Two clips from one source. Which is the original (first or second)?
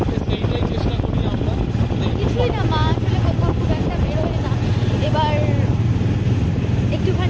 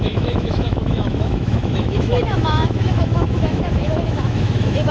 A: first